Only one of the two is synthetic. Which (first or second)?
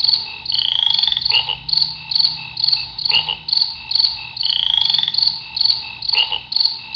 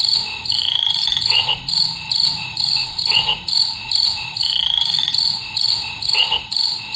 second